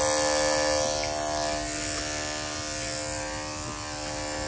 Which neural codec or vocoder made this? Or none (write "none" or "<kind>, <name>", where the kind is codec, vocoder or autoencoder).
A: none